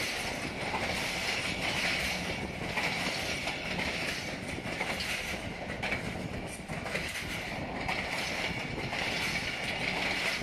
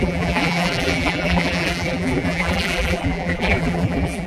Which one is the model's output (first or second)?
second